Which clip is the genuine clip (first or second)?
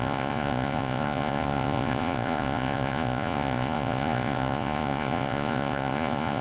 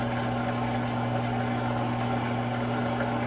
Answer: second